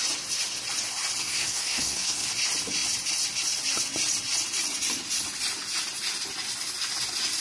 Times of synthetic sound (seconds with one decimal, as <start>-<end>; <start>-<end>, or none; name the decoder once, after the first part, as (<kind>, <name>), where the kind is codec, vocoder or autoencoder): 1.2-2.3 (codec, SNAC)

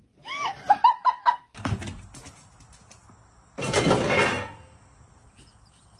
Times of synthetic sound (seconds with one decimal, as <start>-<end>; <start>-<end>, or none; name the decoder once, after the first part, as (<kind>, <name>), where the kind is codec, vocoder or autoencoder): none

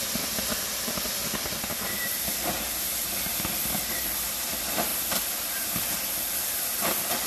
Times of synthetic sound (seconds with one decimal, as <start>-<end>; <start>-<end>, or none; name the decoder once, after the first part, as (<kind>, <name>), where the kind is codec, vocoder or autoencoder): none

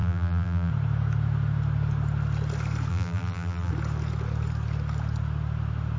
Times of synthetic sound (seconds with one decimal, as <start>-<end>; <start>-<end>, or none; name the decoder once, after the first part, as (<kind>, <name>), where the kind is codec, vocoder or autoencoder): 0.0-0.7 (vocoder, BigVGAN v2); 2.9-3.7

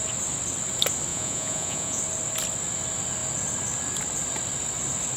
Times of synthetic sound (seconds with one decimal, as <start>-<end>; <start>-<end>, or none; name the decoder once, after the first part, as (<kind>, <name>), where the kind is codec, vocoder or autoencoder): 1.1-2.0 (vocoder, Vocos)

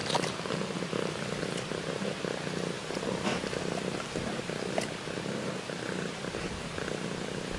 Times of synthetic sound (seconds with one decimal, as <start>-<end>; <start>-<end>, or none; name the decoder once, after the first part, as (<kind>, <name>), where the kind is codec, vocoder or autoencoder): none